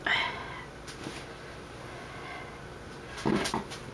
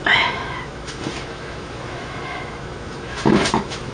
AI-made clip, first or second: second